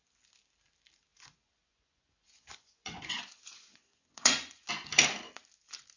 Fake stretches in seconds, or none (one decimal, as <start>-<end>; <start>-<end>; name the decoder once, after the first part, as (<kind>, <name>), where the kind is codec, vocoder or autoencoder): 1.1-4.7 (vocoder, Vocos)